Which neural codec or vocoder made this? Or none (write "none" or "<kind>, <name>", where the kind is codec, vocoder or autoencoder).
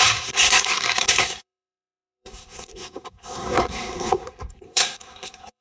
codec, SNAC